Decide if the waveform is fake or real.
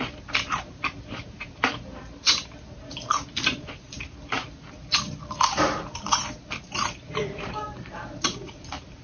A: fake